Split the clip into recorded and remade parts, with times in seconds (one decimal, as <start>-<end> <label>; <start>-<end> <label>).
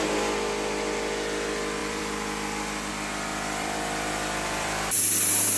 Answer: 0.0-1.8 recorded; 1.8-2.9 remade; 2.9-3.3 recorded; 3.3-5.1 remade; 5.1-5.6 recorded